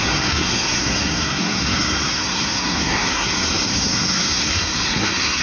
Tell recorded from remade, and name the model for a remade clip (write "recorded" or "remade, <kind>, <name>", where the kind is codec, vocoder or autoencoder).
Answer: remade, codec, SNAC